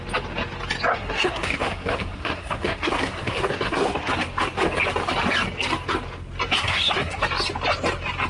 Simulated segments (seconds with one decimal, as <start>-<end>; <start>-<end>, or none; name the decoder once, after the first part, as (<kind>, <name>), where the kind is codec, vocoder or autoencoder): 0.9-4.1 (codec, SNAC); 6.6-7.2